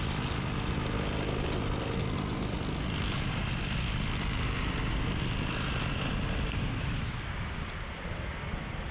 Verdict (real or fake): real